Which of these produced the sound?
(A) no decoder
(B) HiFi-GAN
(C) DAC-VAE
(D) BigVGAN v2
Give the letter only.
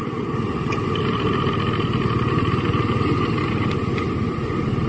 A